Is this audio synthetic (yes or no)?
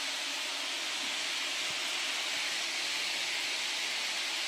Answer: no